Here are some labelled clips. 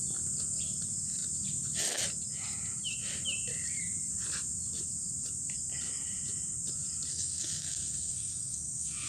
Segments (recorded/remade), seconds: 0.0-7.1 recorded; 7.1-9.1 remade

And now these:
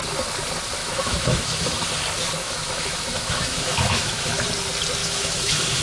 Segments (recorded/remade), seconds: 0.0-0.8 recorded; 0.8-1.9 remade; 1.9-2.4 recorded; 2.4-4.5 remade; 4.5-5.0 recorded; 5.0-5.8 remade